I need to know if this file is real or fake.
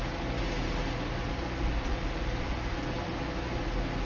real